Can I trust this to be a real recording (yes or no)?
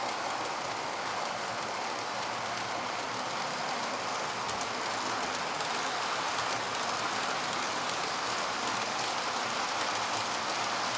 yes